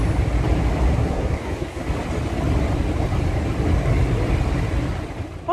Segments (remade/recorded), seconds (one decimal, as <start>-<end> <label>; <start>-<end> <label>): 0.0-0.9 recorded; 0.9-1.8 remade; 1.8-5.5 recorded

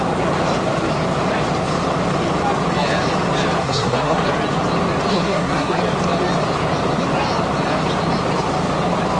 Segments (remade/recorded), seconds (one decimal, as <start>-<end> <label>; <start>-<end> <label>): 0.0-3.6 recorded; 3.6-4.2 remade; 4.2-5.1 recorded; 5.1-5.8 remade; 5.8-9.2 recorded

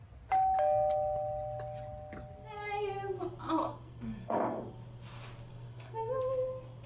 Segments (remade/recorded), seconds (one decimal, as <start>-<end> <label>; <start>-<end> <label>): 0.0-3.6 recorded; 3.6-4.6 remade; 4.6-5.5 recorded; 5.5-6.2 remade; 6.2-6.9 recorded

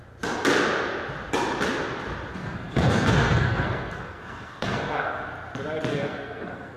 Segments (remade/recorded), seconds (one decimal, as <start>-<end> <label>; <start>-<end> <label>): 0.0-2.3 recorded; 2.3-5.2 remade; 5.2-5.9 recorded; 5.9-6.8 remade